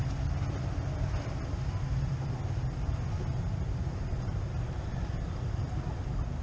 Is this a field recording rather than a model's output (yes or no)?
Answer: yes